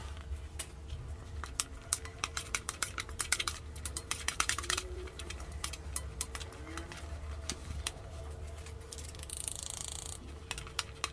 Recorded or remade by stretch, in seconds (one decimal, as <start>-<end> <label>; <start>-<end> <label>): 0.0-2.1 recorded; 2.1-5.7 remade; 5.7-7.6 recorded; 7.6-8.2 remade; 8.2-11.1 recorded